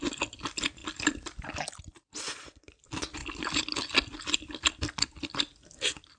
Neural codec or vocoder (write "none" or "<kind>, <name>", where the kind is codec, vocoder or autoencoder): none